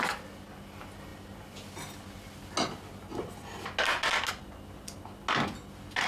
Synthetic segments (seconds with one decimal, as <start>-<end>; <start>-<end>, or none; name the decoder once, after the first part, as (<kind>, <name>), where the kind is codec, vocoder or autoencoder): none